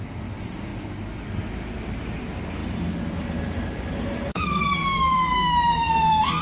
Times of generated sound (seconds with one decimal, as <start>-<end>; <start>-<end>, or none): 4.3-6.4